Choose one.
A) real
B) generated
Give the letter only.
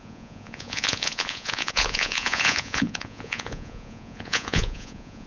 B